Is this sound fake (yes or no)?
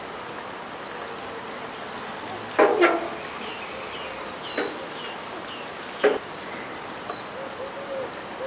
no